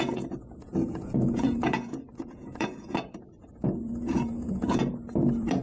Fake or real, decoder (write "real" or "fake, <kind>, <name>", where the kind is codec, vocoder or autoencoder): fake, vocoder, Vocos